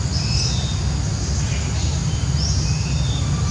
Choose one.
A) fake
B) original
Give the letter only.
B